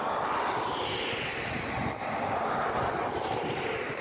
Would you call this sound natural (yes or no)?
yes